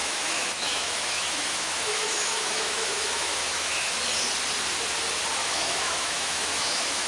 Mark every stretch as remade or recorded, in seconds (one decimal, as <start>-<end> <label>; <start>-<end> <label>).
0.0-3.9 remade; 3.9-5.4 recorded; 5.4-7.1 remade